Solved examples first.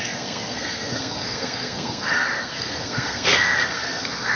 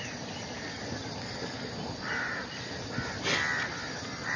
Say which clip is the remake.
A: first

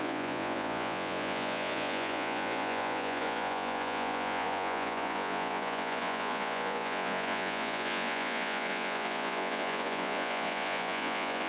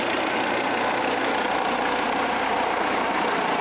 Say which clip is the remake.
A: first